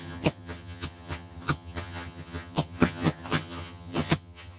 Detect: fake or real fake